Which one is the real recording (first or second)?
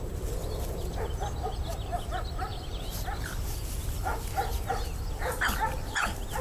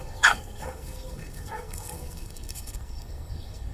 first